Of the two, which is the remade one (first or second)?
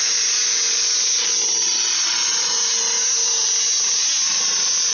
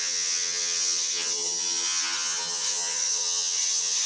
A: second